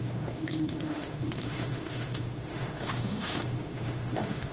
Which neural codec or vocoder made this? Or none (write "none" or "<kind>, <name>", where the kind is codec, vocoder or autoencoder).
autoencoder, DAC-VAE